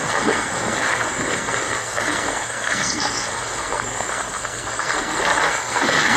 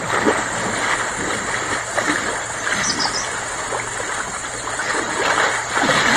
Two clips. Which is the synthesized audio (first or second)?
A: first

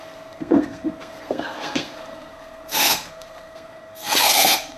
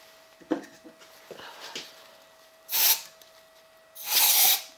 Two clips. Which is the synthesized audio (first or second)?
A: first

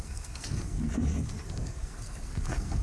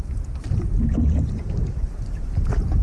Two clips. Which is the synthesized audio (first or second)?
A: first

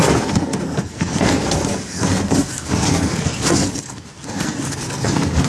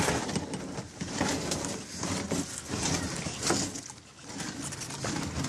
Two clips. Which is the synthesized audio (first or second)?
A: first